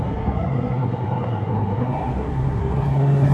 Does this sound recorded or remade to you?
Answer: remade